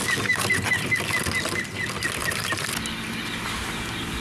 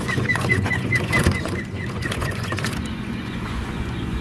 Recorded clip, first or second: first